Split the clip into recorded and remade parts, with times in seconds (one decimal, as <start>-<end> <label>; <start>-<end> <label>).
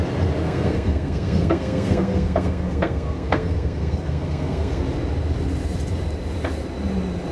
0.0-0.4 recorded; 0.4-4.8 remade; 4.8-7.3 recorded